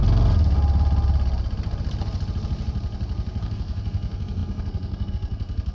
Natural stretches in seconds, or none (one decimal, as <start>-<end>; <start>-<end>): 0.0-3.4